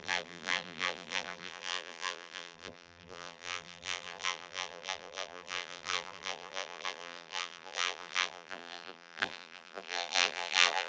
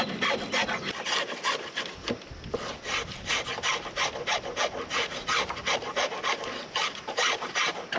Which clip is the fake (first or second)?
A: first